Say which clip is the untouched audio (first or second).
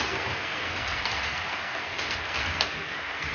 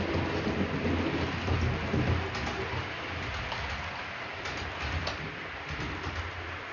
second